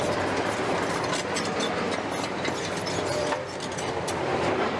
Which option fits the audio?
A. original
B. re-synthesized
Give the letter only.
B